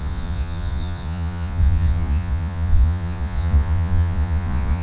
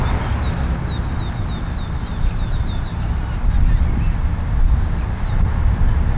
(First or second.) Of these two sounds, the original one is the second